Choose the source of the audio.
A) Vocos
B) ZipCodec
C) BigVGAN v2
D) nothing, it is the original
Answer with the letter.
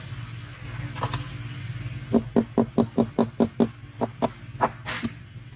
D